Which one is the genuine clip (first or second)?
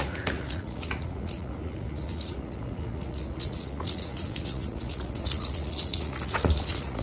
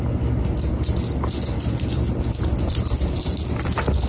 second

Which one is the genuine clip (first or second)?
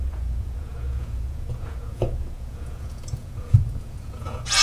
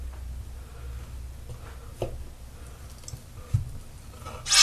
second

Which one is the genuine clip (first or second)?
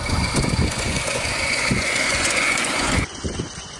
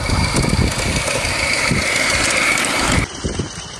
second